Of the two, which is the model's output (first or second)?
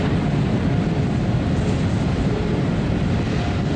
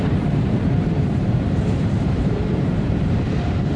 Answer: second